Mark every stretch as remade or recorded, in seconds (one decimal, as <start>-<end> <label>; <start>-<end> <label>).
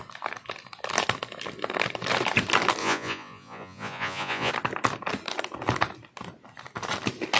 0.0-2.8 recorded; 2.8-4.5 remade; 4.5-7.4 recorded